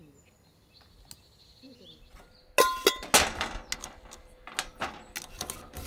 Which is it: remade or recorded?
recorded